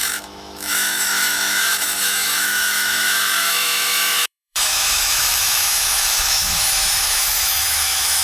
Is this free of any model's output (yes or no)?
no